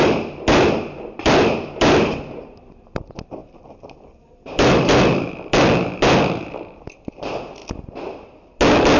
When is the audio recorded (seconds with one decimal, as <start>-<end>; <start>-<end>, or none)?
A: 7.6-9.0